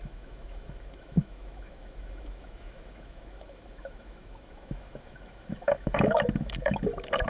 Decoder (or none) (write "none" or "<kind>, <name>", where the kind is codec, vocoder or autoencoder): autoencoder, DAC-VAE